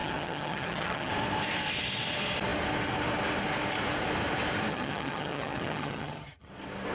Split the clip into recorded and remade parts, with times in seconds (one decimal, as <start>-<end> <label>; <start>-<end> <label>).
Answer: 0.0-1.1 remade; 1.1-4.7 recorded; 4.7-6.5 remade; 6.5-6.9 recorded